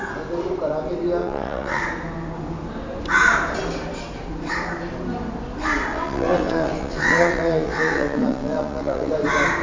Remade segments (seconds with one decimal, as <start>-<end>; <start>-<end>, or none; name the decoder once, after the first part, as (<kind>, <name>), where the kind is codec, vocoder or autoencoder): 1.2-1.8 (vocoder, WaveNeXt); 5.9-9.1